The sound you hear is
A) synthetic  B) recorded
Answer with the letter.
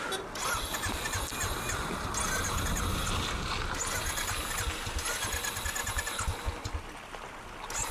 B